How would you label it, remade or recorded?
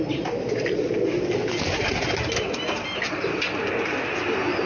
recorded